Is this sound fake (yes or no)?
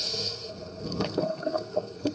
yes